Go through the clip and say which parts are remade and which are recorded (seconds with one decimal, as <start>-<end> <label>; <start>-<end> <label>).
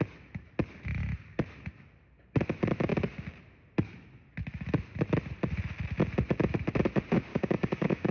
0.0-7.3 recorded; 7.3-8.1 remade